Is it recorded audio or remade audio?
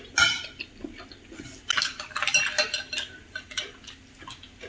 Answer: recorded